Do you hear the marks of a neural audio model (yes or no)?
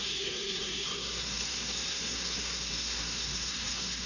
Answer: yes